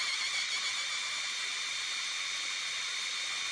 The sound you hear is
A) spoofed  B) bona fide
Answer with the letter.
B